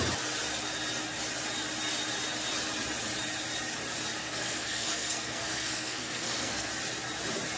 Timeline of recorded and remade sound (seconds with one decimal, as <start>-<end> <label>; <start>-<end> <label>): 0.0-4.2 recorded; 4.2-6.7 remade; 6.7-7.6 recorded